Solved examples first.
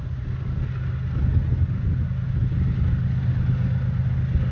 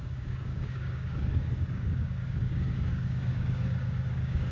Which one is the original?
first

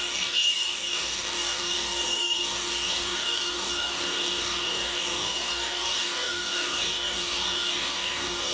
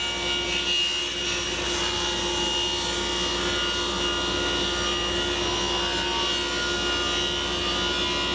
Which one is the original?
second